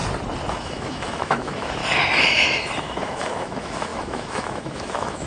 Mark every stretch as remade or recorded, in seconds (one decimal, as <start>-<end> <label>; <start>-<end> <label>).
0.0-0.5 recorded; 0.5-1.8 remade; 1.8-2.8 recorded; 2.8-5.3 remade